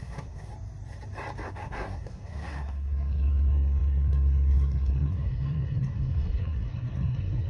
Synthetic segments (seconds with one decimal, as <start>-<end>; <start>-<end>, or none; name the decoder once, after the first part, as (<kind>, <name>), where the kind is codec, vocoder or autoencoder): 0.0-0.5 (codec, SNAC); 1.5-7.5